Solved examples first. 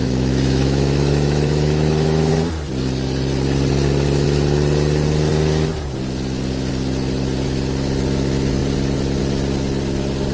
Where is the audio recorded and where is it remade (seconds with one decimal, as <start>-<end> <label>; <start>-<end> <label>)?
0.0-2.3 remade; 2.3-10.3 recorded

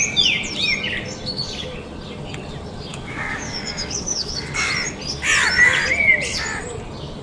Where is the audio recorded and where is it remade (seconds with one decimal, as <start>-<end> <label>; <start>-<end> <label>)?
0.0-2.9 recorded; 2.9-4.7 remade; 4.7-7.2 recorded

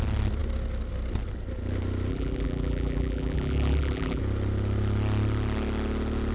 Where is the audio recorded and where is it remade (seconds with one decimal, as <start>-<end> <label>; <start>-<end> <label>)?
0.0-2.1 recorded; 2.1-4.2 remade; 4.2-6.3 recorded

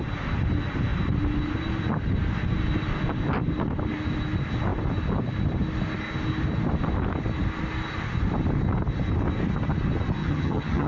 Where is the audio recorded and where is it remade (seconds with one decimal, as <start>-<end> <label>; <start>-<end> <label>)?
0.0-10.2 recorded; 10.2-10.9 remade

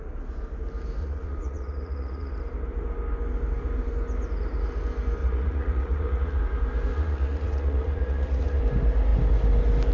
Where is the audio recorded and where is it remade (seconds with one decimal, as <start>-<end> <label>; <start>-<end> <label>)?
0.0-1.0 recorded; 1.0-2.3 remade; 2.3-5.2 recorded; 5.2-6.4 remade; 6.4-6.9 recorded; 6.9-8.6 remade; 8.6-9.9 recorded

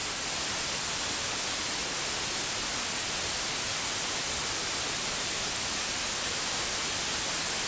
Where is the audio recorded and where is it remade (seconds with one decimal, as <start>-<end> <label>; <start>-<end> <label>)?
0.0-7.7 recorded